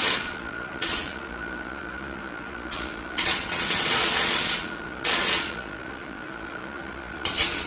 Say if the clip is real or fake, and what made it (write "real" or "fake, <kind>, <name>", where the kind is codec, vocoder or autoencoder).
fake, vocoder, Vocos